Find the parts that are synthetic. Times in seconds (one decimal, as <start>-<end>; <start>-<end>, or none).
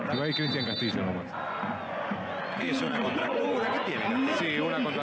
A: 1.1-4.1